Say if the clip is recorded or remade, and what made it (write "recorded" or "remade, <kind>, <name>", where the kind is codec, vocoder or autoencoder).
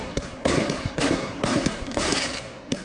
remade, codec, SNAC